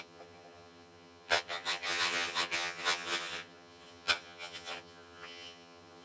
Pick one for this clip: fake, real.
fake